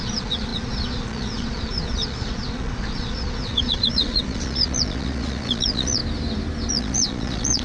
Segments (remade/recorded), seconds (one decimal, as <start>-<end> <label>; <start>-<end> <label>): 0.0-6.0 remade; 6.0-6.7 recorded; 6.7-7.6 remade